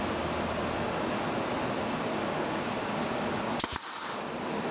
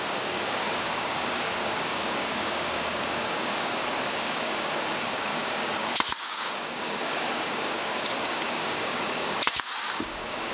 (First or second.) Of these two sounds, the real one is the first